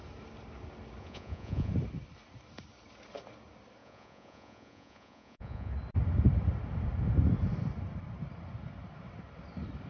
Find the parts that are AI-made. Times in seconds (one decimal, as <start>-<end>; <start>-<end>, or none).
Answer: 1.0-1.7; 3.8-5.7